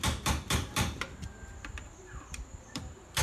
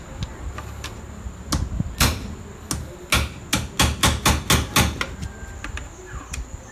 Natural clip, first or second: second